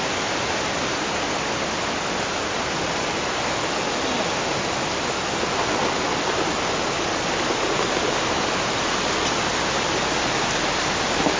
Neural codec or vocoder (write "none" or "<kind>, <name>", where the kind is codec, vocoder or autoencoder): none